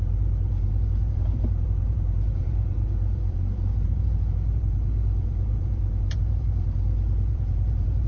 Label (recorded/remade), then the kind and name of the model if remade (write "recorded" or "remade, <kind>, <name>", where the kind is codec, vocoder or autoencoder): remade, vocoder, BigVGAN v2